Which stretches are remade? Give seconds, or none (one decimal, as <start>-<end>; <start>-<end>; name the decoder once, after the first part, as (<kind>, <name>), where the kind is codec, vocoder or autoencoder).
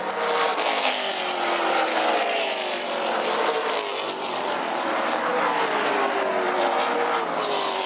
0.4-1.1 (codec, SNAC)